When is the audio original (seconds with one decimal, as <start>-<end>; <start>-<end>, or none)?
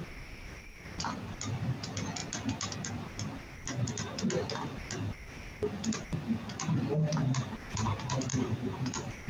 0.0-8.3